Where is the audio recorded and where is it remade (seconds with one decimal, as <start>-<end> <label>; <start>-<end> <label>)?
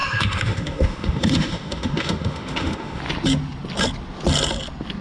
0.0-3.0 remade; 3.0-5.0 recorded